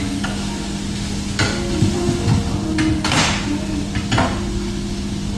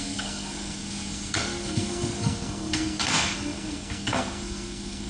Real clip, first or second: first